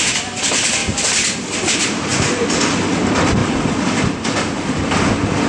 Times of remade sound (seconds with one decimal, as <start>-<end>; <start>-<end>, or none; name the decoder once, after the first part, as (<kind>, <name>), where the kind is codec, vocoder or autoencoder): 0.8-1.4 (vocoder, BigVGAN v2); 2.1-3.0; 3.4-5.0